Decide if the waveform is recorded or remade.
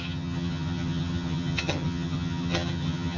remade